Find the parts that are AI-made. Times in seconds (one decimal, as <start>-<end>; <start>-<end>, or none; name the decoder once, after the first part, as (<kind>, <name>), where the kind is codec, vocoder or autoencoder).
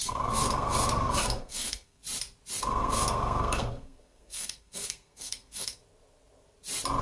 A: 0.0-2.0 (codec, SNAC); 2.6-5.8